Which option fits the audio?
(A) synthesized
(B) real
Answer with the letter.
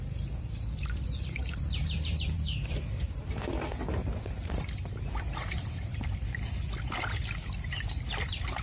A